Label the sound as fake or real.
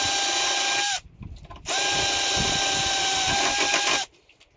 real